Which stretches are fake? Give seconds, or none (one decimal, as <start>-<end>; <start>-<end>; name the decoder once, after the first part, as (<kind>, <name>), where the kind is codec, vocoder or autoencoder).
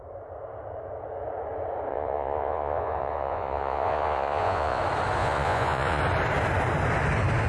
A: 1.9-4.8 (vocoder, Vocos); 5.2-6.0